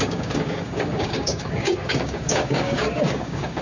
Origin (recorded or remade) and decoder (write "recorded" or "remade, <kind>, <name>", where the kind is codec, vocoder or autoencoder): remade, codec, DAC